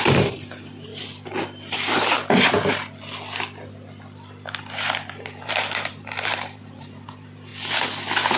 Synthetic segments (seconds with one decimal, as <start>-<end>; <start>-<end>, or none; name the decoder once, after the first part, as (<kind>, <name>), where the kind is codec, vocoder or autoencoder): 0.0-0.9 (vocoder, BigVGAN v2); 4.6-7.5